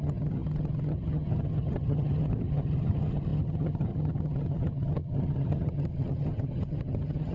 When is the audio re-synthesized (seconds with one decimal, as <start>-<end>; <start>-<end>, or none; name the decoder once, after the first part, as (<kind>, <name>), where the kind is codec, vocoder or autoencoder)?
0.0-7.3 (vocoder, HiFi-GAN)